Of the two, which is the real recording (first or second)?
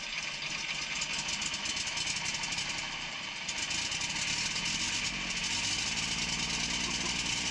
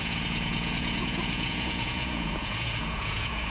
first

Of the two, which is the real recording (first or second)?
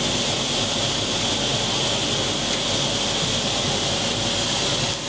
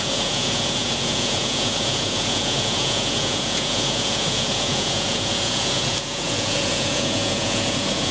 first